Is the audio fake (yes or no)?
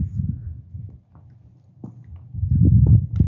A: no